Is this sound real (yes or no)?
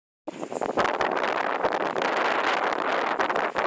yes